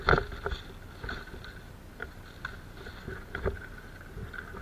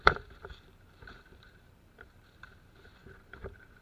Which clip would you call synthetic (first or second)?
second